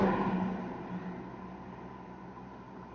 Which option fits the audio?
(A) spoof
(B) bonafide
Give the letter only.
B